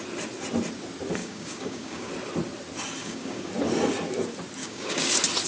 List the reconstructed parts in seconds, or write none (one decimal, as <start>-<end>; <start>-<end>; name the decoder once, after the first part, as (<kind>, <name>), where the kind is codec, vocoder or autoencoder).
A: 1.2-2.1 (codec, DAC); 3.0-3.5; 4.6-5.1